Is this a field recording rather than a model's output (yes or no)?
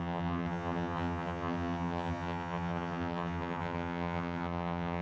no